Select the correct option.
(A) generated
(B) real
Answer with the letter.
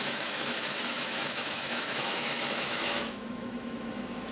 A